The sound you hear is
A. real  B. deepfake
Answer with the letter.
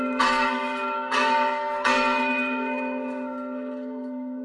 B